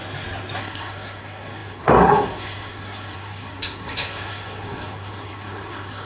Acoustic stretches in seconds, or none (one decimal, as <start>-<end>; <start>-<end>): 0.0-0.6